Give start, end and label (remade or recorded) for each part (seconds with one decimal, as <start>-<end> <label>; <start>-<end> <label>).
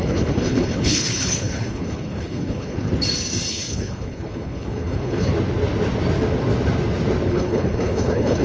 0.0-2.9 remade; 2.9-3.5 recorded; 3.5-5.3 remade; 5.3-7.3 recorded; 7.3-8.4 remade